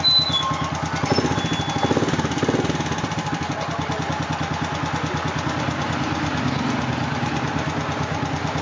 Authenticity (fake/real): real